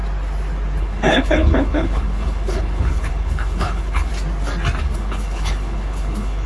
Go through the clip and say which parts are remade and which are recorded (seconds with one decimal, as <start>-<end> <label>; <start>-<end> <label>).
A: 0.0-0.8 recorded; 0.8-4.1 remade; 4.1-4.8 recorded; 4.8-6.5 remade